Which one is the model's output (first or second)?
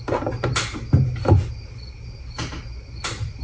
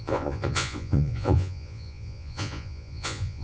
second